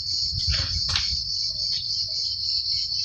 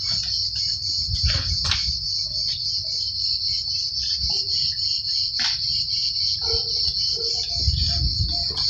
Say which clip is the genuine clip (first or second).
second